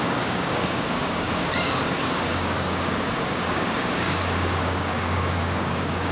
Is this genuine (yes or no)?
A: no